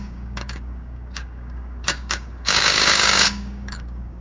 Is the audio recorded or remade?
remade